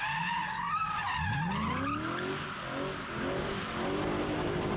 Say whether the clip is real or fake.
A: real